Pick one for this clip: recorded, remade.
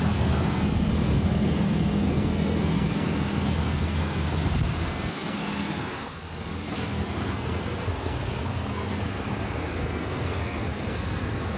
remade